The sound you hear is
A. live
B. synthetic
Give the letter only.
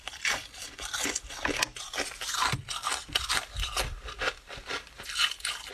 A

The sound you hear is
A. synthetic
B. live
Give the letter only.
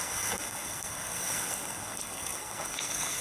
A